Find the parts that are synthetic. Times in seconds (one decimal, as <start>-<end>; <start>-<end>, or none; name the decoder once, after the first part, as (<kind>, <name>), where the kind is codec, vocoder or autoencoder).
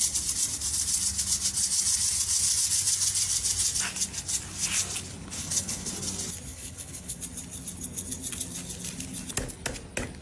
5.4-5.9 (codec, HILCodec); 6.5-7.2